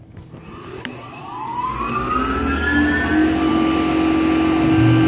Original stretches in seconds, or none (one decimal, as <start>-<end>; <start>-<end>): 0.0-5.1